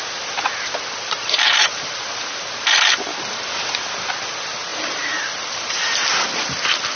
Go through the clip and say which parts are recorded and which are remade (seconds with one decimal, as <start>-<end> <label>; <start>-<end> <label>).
0.0-1.2 recorded; 1.2-2.3 remade; 2.3-4.7 recorded; 4.7-6.1 remade; 6.1-7.0 recorded